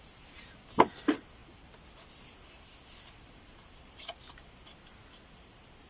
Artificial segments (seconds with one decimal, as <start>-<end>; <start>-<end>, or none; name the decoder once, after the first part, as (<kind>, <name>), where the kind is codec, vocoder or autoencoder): none